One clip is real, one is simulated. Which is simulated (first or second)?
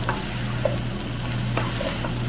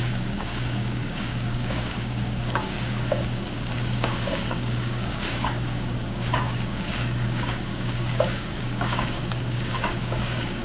second